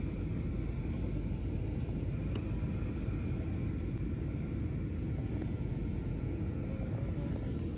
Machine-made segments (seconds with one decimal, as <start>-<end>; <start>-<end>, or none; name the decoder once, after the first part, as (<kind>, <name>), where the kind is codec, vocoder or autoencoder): 4.9-6.6 (vocoder, Vocos)